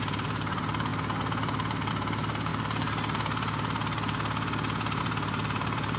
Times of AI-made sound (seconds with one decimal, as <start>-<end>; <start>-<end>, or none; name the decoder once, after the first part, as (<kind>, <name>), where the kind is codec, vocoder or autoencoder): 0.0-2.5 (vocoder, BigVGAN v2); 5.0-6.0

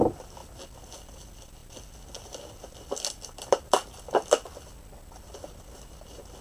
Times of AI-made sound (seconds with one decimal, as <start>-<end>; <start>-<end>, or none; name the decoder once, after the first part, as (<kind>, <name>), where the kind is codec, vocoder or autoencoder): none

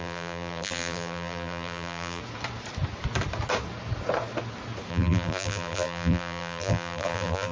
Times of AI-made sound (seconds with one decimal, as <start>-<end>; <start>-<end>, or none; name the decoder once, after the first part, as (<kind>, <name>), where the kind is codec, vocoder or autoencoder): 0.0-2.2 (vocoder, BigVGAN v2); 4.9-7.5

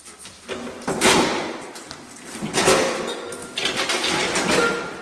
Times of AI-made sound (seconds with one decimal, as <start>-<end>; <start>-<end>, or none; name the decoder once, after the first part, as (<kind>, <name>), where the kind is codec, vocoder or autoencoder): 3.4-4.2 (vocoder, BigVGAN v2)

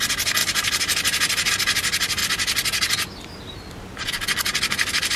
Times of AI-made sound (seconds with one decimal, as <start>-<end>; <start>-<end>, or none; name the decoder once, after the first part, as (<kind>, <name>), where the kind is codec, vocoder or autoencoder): 0.4-1.5 (vocoder, BigVGAN v2)

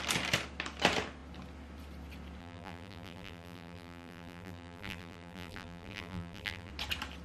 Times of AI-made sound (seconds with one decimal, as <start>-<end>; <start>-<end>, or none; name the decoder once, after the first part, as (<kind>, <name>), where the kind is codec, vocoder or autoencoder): 2.4-6.7 (vocoder, BigVGAN v2)

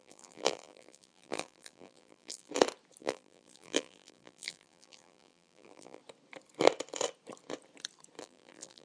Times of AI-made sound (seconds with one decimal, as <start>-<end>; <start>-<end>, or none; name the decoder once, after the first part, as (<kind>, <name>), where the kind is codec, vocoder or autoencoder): 0.0-2.5 (vocoder, BigVGAN v2); 3.0-6.0; 8.2-8.8

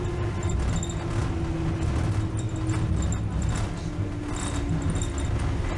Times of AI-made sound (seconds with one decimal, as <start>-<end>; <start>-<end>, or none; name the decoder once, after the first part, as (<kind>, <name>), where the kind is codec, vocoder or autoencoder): none